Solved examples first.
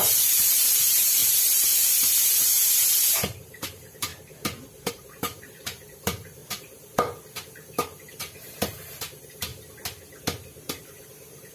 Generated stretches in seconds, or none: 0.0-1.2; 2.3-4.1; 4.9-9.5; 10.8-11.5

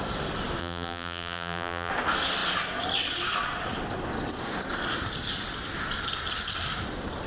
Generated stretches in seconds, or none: 0.6-1.9

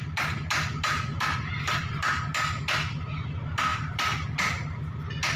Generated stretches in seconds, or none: 1.1-2.2; 3.7-4.5

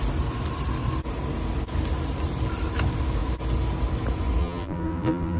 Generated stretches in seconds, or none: 4.4-5.4

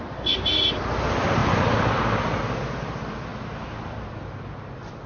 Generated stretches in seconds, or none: 1.4-2.4

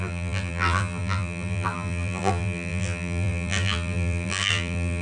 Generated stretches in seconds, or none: 0.0-5.0

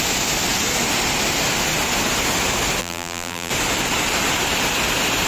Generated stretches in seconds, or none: 2.8-3.5

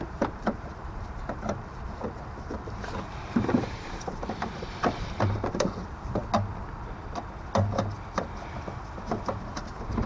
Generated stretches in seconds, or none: 0.0-6.2; 8.8-10.1